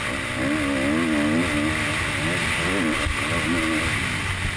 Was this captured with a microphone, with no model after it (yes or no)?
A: yes